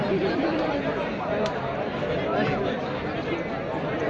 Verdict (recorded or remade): recorded